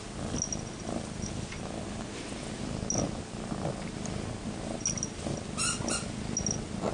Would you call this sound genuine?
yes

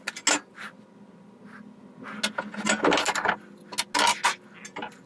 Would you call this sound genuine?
yes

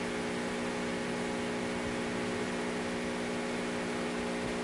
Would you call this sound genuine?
yes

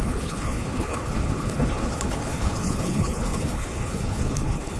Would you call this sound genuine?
no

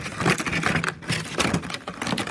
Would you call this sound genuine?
yes